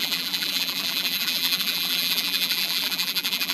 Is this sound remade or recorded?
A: remade